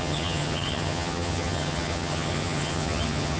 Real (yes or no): no